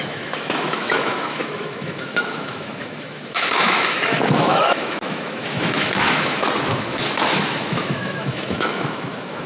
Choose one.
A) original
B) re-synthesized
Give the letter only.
B